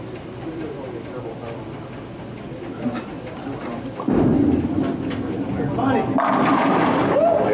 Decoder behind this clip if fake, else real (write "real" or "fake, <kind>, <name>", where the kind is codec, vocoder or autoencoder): real